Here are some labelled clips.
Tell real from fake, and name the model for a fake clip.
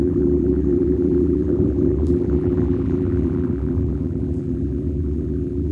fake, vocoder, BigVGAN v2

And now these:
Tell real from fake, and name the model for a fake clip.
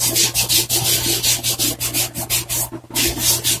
real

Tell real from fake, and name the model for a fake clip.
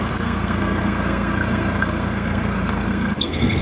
fake, codec, SNAC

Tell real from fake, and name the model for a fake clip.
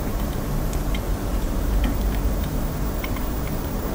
fake, vocoder, BigVGAN v2